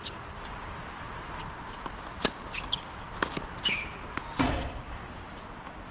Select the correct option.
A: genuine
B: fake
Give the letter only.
A